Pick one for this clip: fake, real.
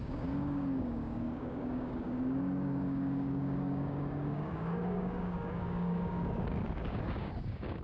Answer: fake